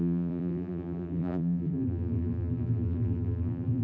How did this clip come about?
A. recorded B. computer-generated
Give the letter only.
B